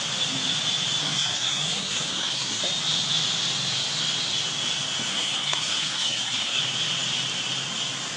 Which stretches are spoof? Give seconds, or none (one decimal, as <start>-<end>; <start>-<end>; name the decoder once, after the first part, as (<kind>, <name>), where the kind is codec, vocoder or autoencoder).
1.0-2.6 (codec, SNAC); 5.1-6.6

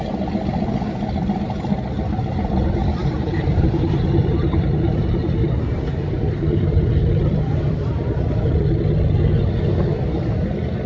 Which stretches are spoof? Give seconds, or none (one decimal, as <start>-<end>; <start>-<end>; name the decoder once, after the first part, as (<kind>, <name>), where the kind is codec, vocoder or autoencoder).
3.0-6.9 (vocoder, BigVGAN v2)

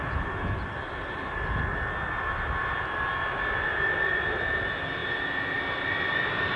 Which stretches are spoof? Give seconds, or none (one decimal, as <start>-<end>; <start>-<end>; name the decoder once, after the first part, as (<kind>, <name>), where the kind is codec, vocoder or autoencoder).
none

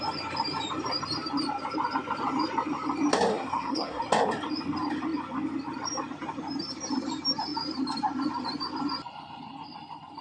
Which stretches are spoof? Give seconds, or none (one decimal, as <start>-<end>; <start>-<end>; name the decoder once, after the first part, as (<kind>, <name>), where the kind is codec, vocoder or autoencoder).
3.3-4.0 (codec, SNAC)